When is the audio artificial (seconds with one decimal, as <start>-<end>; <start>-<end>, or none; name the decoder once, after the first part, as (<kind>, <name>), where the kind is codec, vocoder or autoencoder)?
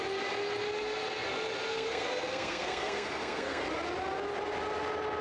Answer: 1.7-3.6 (codec, SNAC)